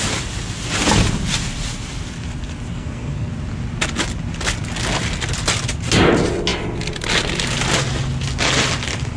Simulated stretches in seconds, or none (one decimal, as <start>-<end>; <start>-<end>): 2.7-3.3